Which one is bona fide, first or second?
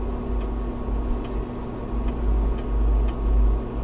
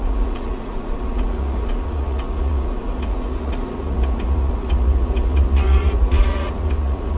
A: first